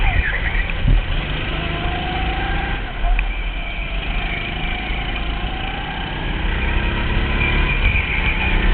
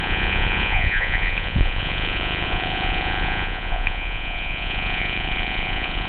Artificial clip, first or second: second